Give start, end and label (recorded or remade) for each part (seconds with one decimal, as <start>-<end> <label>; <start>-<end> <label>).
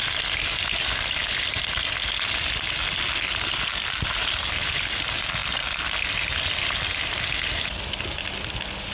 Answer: 0.0-8.9 recorded